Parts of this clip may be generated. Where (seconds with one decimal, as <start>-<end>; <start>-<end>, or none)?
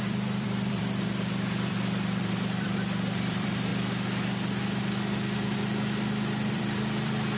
0.0-3.7; 6.5-7.4